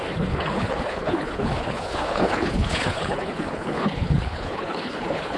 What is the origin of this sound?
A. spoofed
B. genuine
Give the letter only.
A